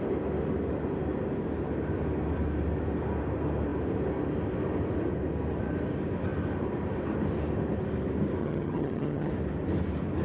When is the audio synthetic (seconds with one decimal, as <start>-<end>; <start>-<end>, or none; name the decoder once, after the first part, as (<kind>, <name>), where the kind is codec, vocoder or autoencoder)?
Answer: 8.4-9.3 (vocoder, HiFi-GAN)